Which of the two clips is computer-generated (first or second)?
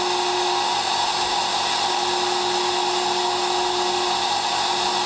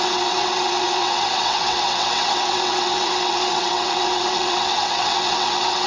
second